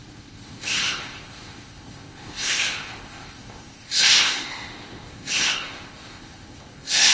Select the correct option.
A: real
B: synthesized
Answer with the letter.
B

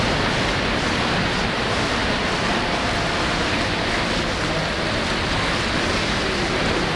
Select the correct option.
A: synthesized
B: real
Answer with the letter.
B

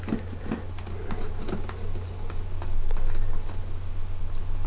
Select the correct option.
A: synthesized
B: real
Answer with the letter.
B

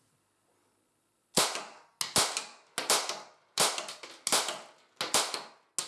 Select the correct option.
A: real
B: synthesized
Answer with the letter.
A